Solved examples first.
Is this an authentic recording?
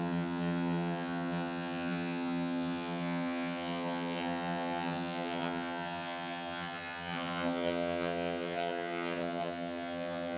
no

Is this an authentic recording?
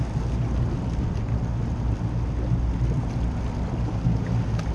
yes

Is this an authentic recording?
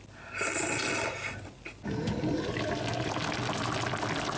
yes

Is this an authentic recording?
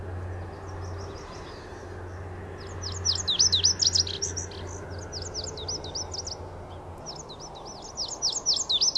yes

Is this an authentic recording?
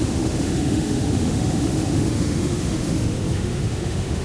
no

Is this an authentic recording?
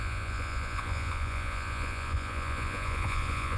no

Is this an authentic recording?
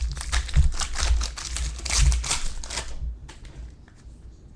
yes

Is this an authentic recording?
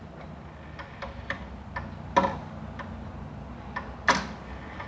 yes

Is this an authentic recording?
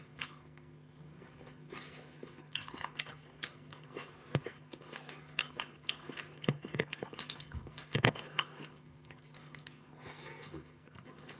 no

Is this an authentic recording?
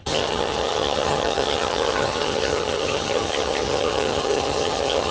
no